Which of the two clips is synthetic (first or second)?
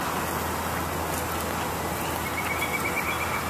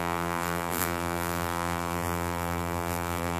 second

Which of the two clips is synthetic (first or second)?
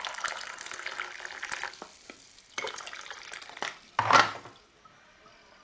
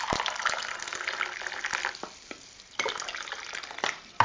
second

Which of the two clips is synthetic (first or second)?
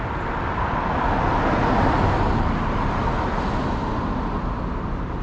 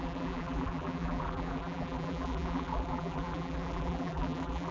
second